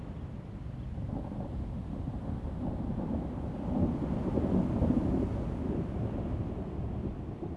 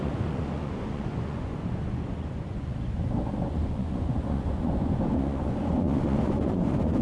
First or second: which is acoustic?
first